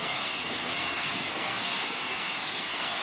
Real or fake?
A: fake